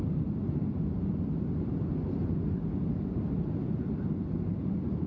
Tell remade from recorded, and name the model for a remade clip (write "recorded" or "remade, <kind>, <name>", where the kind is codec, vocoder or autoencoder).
recorded